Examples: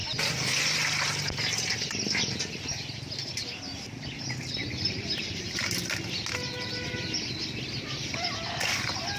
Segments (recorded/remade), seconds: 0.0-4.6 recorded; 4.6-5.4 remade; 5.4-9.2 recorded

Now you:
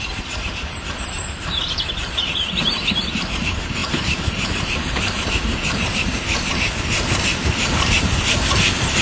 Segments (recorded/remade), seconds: 0.0-9.0 remade

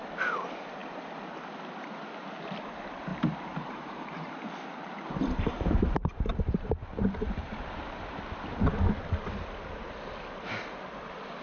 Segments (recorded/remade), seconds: 0.0-3.1 recorded; 3.1-4.3 remade; 4.3-4.7 recorded; 4.7-7.6 remade; 7.6-11.4 recorded